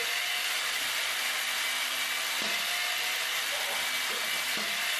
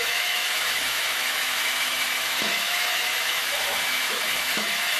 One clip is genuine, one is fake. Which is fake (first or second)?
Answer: second